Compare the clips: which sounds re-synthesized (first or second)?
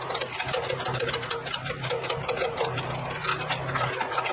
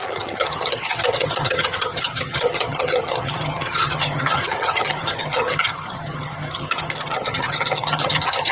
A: second